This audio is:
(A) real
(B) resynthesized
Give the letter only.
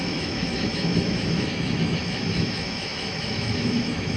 B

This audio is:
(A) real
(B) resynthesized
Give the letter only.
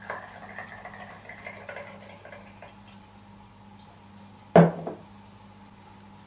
A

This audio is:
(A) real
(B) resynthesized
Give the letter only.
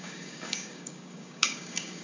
B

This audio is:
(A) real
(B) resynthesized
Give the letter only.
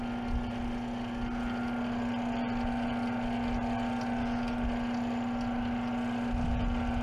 A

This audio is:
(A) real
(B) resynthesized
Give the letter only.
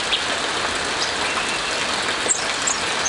A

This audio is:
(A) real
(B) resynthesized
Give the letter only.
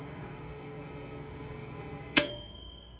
B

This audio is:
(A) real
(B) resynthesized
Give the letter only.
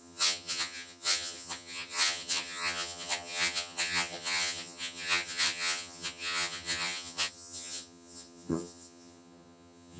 B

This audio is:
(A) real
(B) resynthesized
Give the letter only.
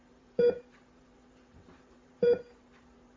B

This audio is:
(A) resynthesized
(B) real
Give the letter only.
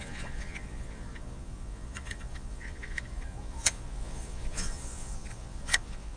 A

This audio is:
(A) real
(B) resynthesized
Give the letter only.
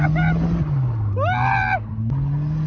A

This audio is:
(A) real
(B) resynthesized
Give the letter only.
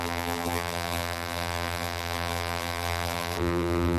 B